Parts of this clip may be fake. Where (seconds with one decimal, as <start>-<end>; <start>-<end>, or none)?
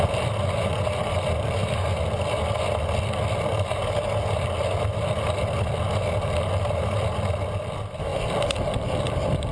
none